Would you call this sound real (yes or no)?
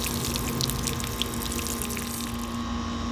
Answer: yes